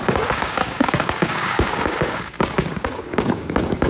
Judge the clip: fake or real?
fake